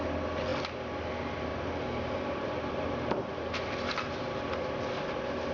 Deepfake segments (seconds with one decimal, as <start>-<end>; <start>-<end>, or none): 1.5-4.8